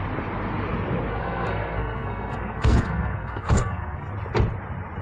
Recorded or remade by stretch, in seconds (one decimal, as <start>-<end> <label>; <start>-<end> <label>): 0.0-1.1 recorded; 1.1-4.1 remade; 4.1-5.0 recorded